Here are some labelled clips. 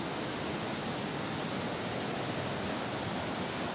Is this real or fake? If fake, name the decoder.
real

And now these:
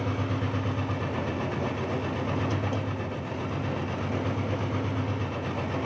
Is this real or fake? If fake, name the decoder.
real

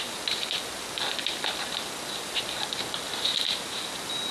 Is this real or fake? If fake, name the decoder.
real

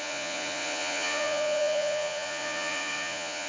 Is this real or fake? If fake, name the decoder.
fake, vocoder, Vocos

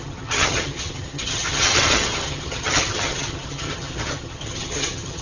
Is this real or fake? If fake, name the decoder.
fake, vocoder, HiFi-GAN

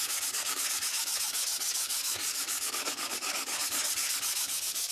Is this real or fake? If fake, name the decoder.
fake, codec, DAC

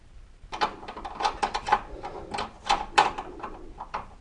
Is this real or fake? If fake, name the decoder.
real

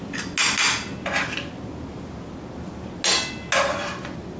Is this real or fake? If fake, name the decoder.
real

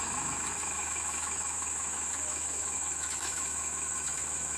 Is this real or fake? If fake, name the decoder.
fake, autoencoder, DAC-VAE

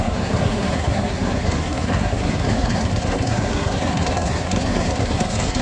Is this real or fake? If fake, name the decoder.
fake, codec, SNAC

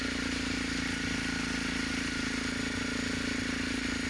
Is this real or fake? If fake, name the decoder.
real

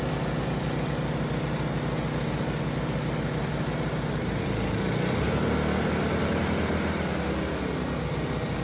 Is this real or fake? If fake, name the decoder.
real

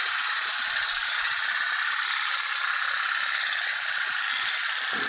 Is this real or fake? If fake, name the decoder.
real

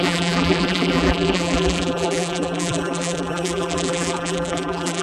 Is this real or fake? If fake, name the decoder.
fake, vocoder, BigVGAN v2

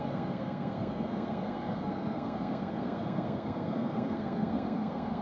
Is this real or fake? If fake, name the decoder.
fake, codec, SNAC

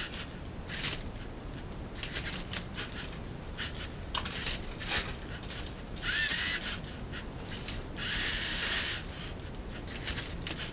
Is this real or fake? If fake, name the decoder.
real